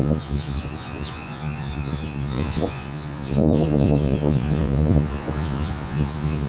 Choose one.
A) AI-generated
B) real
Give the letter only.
A